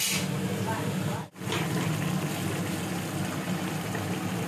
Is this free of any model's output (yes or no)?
yes